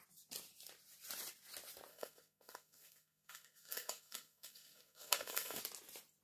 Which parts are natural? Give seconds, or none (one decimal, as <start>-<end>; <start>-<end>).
0.0-1.9; 5.6-6.2